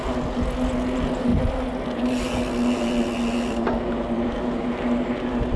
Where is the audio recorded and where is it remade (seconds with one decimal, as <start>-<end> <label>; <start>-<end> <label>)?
0.0-5.6 recorded